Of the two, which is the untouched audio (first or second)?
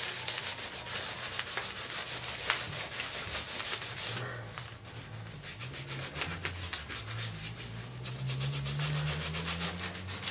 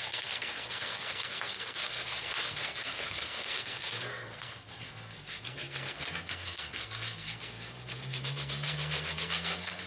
first